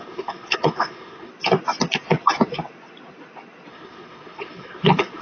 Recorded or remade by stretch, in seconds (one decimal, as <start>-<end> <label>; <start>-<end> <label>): 0.0-1.3 remade; 1.3-3.7 recorded; 3.7-5.2 remade